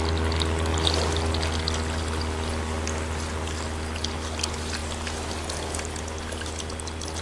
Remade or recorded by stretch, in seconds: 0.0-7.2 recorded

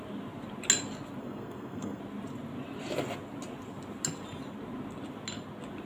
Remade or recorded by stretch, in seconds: 0.0-1.2 recorded; 1.2-2.0 remade; 2.0-5.9 recorded

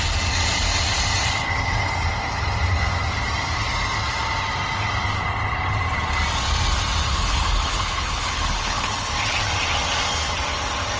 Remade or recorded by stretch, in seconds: 0.0-7.1 recorded; 7.1-9.1 remade; 9.1-11.0 recorded

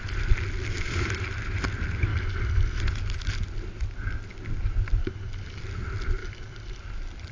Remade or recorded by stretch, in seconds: 0.0-2.1 recorded; 2.1-2.8 remade; 2.8-5.0 recorded; 5.0-5.6 remade; 5.6-6.2 recorded; 6.2-6.8 remade; 6.8-7.3 recorded

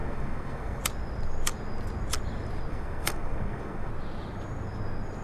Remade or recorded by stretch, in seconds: 0.0-0.8 remade; 0.8-2.7 recorded; 2.7-3.9 remade; 3.9-5.2 recorded

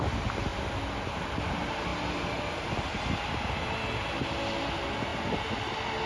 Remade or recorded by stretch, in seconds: 0.0-6.1 recorded